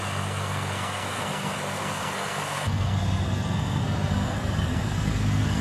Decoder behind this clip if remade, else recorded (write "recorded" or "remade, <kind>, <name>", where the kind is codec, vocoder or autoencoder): remade, codec, SNAC